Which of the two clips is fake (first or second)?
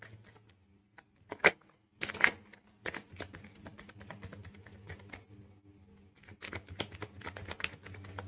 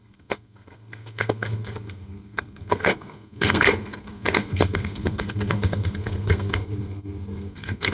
second